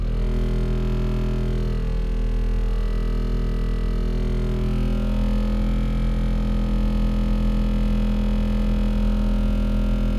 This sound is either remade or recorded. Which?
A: recorded